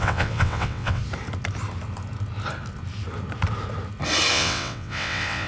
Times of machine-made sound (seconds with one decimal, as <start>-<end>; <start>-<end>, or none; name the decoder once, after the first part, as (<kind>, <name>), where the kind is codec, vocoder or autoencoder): 0.0-1.0 (vocoder, WaveNeXt); 4.3-5.5